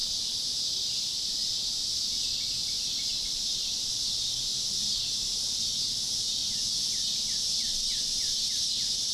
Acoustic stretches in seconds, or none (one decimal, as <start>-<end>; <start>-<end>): 1.5-2.6; 3.8-4.5; 5.9-9.1